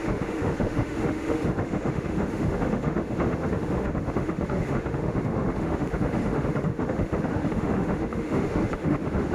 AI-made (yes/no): yes